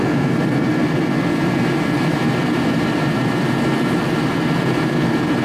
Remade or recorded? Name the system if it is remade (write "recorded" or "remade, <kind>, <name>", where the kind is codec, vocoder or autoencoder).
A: remade, vocoder, BigVGAN v2